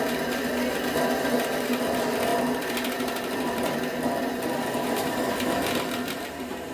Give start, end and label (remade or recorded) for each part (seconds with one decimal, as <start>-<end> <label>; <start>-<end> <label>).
0.0-2.3 recorded; 2.3-6.3 remade; 6.3-6.7 recorded